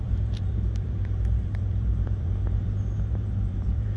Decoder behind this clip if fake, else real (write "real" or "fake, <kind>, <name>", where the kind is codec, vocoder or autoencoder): fake, vocoder, BigVGAN v2